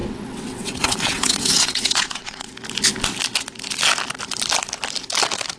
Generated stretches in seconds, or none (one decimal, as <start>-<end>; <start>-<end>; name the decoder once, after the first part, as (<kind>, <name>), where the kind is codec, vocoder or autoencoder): 0.0-2.5 (vocoder, WaveNeXt)